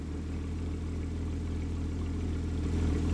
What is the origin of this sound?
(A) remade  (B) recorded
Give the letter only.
B